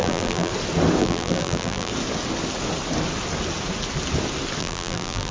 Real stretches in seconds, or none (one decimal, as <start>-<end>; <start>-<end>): 0.5-1.0; 1.9-4.6